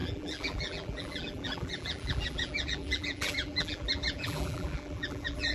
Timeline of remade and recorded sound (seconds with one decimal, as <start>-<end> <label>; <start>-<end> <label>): 0.0-5.5 remade